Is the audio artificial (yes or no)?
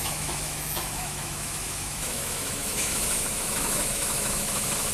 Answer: yes